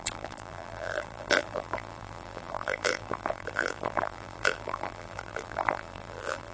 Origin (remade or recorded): remade